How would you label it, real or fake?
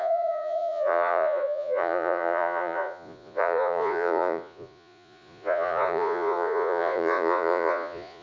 fake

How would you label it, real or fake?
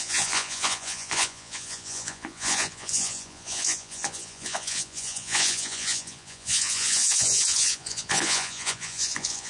fake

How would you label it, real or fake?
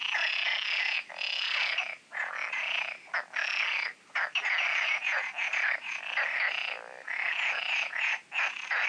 real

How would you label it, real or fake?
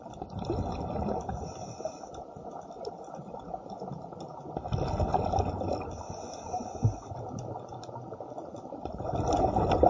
real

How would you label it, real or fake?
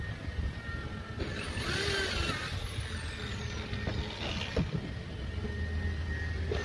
real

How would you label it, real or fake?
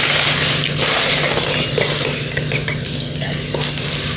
real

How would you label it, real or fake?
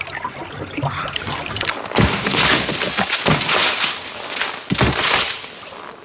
real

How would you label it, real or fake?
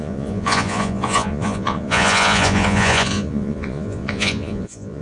fake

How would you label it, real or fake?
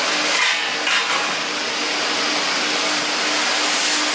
real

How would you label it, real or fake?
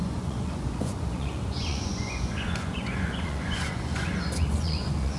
fake